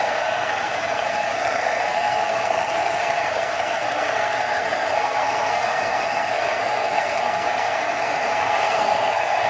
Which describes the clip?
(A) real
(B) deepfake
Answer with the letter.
B